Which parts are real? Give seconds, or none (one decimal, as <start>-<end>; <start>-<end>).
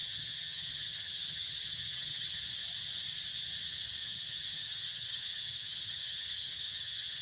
2.4-4.0